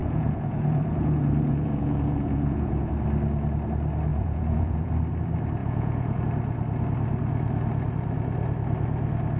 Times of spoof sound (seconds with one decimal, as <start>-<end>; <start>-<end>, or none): 0.0-2.9; 4.1-4.9; 5.6-6.2